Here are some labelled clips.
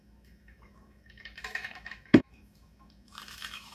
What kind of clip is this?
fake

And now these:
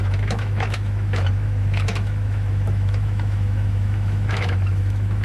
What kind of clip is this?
fake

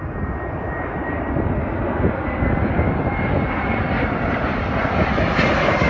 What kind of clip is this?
real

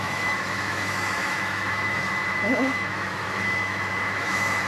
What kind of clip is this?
fake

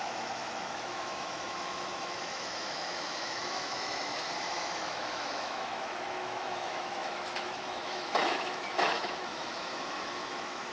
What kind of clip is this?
fake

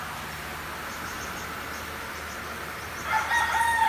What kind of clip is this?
real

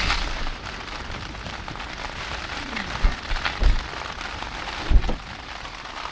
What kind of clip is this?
real